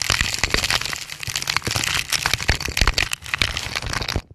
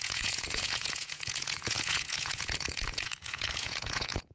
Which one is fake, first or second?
second